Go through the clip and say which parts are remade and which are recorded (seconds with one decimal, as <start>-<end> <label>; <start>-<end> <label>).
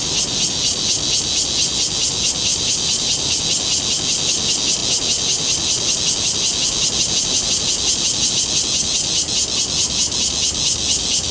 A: 0.0-2.5 recorded; 2.5-3.4 remade; 3.4-11.3 recorded